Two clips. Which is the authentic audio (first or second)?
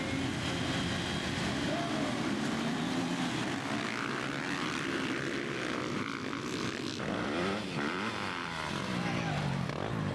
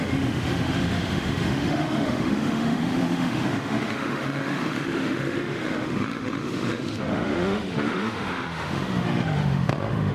first